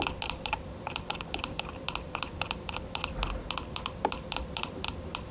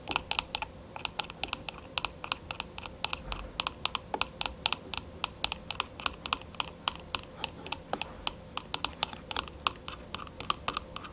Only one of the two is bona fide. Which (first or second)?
second